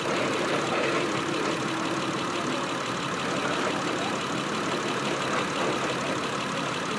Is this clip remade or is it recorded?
recorded